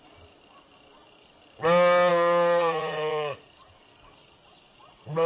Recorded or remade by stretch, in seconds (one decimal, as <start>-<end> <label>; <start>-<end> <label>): 0.0-2.1 recorded; 2.1-3.4 remade; 3.4-5.3 recorded